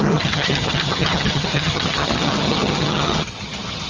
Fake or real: fake